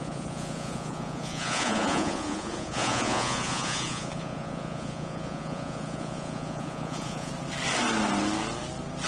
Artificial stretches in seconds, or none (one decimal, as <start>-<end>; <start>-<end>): 0.0-7.3